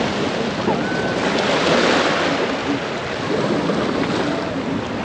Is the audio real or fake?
real